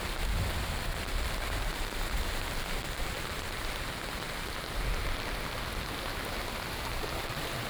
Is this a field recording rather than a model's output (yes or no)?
yes